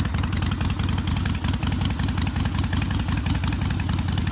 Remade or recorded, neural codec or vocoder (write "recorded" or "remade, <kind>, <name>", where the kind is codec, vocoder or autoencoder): recorded